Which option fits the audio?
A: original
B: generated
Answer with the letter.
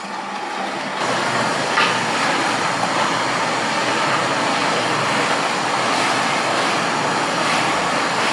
A